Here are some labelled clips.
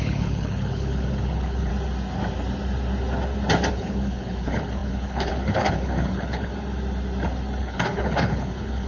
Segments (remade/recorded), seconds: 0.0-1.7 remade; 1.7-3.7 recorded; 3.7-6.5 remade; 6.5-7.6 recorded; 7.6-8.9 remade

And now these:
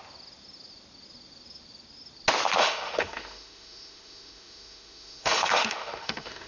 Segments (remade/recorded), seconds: 0.0-2.6 recorded; 2.6-6.5 remade

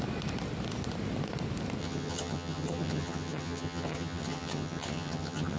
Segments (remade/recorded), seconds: 0.0-1.8 recorded; 1.8-5.6 remade

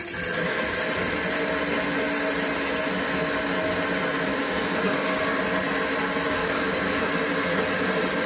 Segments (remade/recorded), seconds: 0.0-4.3 recorded; 4.3-5.4 remade; 5.4-6.4 recorded; 6.4-7.0 remade; 7.0-8.3 recorded

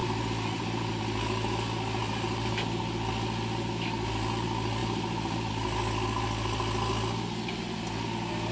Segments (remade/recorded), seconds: 0.0-1.0 remade; 1.0-2.0 recorded; 2.0-2.8 remade; 2.8-4.8 recorded; 4.8-5.5 remade; 5.5-8.5 recorded